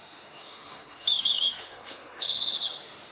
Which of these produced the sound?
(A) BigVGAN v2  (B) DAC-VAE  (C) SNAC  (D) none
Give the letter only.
B